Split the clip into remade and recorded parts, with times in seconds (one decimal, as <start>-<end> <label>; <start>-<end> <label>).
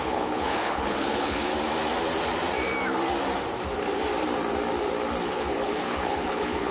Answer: 0.0-1.5 remade; 1.5-5.2 recorded; 5.2-6.7 remade